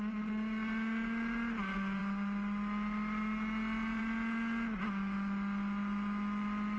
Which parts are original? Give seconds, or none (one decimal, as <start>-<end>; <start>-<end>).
0.0-6.8